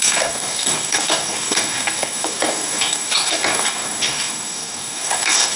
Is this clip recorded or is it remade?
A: remade